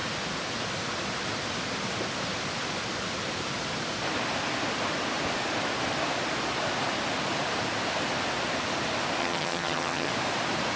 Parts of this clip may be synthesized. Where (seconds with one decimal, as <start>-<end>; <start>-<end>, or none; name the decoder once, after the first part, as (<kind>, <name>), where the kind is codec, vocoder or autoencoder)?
9.2-10.1 (vocoder, HiFi-GAN)